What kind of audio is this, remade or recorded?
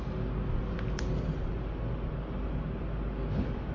recorded